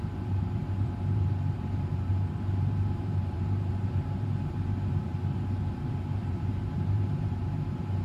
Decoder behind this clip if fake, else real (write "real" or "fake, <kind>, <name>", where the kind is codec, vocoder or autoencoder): fake, vocoder, BigVGAN v2